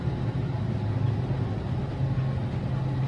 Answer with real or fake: real